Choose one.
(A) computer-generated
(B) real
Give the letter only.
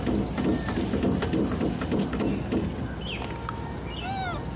B